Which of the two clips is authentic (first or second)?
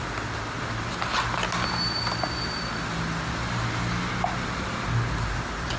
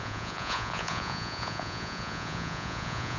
first